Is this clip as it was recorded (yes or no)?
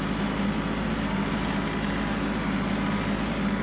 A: yes